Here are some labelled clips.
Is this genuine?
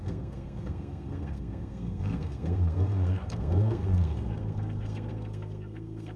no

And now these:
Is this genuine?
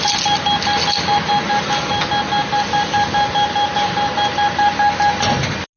yes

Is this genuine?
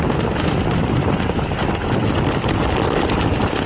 yes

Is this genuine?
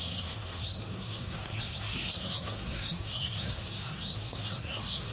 no